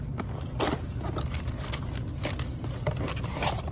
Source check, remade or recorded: recorded